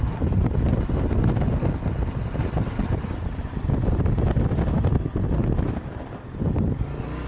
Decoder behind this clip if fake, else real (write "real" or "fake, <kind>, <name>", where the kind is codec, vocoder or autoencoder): real